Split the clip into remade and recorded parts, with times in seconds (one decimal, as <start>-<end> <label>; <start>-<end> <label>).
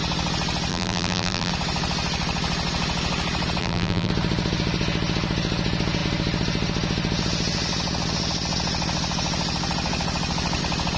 0.0-0.7 recorded; 0.7-1.5 remade; 1.5-3.6 recorded; 3.6-4.1 remade; 4.1-11.0 recorded